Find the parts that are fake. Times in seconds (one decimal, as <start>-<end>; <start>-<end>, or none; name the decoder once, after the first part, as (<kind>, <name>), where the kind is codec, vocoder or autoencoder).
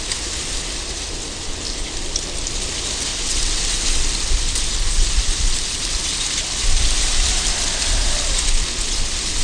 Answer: 3.1-3.8 (vocoder, WaveNeXt)